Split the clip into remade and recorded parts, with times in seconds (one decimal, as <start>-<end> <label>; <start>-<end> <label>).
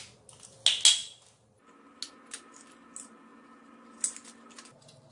0.0-5.1 recorded